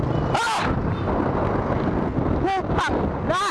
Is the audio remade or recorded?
recorded